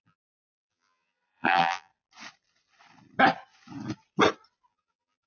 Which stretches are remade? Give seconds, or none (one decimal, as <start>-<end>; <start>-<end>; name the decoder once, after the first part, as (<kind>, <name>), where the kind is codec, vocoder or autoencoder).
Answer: 0.0-1.9 (vocoder, BigVGAN v2); 4.7-5.3